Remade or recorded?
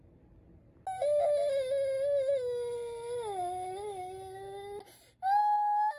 recorded